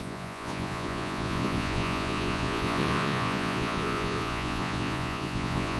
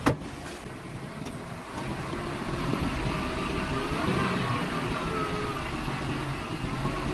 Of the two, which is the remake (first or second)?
first